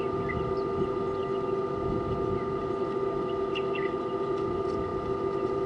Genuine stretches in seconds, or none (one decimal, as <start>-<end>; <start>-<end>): 0.0-5.7